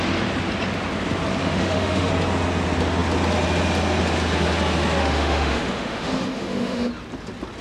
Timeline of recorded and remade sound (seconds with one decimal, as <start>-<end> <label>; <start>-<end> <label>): 0.0-1.4 recorded; 1.4-2.1 remade; 2.1-5.0 recorded; 5.0-6.9 remade; 6.9-7.6 recorded